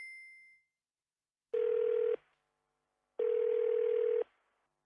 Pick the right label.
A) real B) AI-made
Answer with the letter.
A